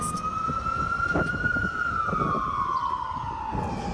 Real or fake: real